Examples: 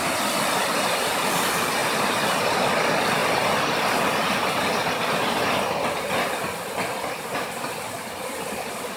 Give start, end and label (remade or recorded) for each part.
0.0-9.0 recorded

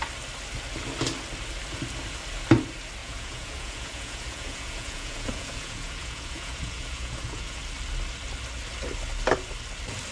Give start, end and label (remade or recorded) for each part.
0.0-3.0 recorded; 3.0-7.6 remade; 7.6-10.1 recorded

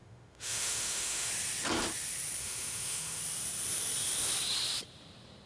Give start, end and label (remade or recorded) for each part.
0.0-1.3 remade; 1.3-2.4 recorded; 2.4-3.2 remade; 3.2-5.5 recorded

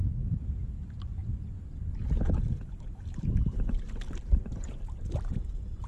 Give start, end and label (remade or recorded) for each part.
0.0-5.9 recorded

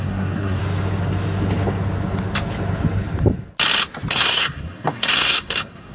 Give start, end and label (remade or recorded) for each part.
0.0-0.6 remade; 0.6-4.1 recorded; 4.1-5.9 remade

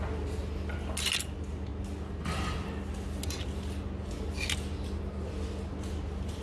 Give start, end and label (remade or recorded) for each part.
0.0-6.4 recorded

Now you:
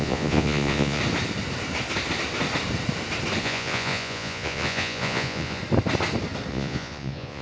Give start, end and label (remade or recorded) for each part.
0.0-1.0 remade; 1.0-3.4 recorded; 3.4-5.6 remade; 5.6-6.5 recorded; 6.5-7.4 remade

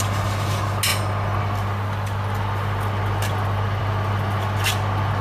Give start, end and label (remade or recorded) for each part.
0.0-5.2 recorded